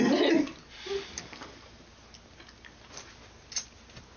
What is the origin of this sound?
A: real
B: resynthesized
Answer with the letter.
A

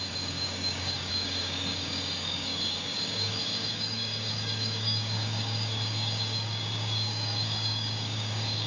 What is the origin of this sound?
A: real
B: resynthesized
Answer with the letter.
B